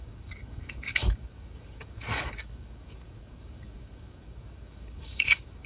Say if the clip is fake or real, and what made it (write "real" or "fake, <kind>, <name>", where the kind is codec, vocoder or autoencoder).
fake, codec, DAC